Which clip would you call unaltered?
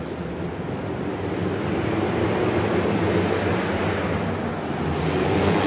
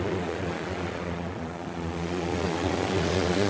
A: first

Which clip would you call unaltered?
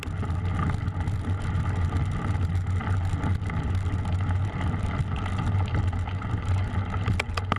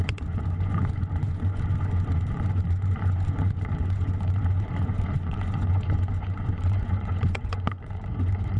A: first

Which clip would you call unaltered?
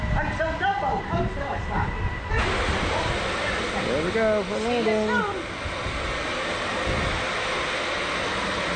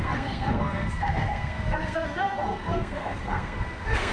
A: first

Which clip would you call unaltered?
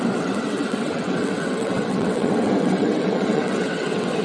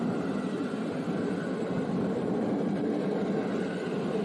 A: second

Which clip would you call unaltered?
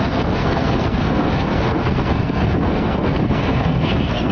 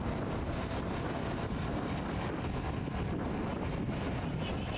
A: second